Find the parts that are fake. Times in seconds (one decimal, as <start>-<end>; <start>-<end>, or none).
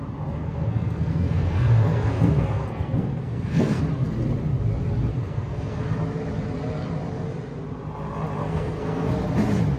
0.4-3.8; 5.1-5.8; 8.4-9.1